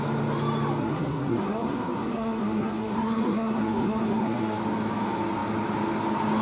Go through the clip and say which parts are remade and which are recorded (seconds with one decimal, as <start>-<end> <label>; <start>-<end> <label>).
0.0-0.8 recorded; 0.8-4.6 remade; 4.6-6.4 recorded